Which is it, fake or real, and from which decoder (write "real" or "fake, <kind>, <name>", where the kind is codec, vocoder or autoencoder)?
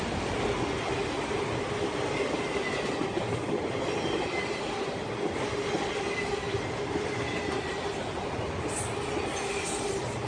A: real